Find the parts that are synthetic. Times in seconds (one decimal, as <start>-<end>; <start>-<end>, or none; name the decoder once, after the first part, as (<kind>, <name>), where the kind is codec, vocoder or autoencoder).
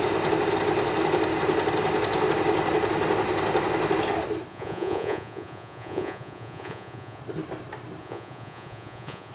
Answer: 4.5-7.2 (vocoder, Vocos); 8.0-9.3